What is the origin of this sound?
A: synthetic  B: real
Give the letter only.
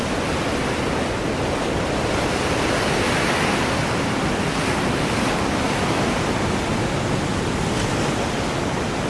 B